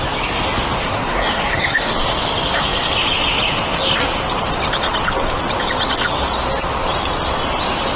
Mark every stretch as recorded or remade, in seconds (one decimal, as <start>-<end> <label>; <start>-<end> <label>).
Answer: 0.0-0.8 recorded; 0.8-1.9 remade; 1.9-8.0 recorded